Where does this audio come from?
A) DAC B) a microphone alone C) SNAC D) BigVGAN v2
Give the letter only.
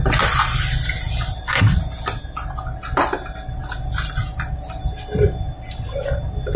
B